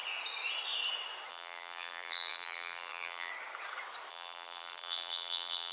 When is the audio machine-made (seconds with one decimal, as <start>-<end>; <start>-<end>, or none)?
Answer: 1.3-3.3; 4.1-5.7